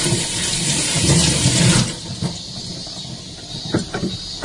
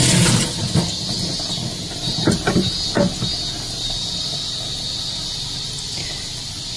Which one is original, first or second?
second